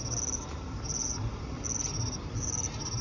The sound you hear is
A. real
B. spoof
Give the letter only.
A